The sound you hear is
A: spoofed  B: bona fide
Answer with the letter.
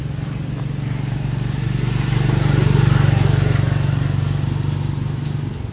B